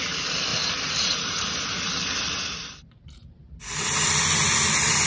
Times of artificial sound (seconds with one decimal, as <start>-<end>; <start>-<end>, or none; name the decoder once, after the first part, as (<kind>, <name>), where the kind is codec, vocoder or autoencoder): 0.5-3.5 (vocoder, BigVGAN v2)